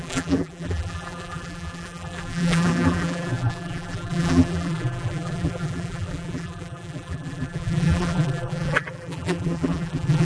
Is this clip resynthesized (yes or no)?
yes